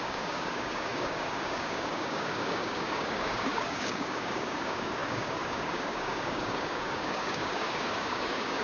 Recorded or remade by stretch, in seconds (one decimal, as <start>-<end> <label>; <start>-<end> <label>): 0.0-8.6 remade